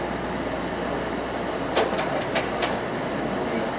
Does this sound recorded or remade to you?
recorded